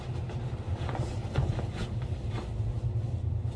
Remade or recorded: recorded